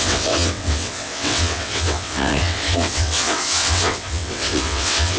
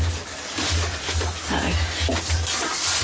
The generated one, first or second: first